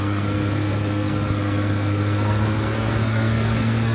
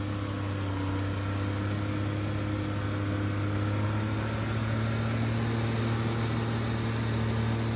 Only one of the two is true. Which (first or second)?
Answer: second